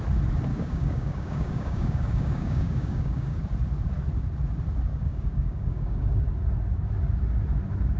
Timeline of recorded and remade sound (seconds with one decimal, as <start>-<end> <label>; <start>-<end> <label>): 0.0-0.5 recorded; 0.5-3.4 remade; 3.4-4.9 recorded; 4.9-6.3 remade; 6.3-8.0 recorded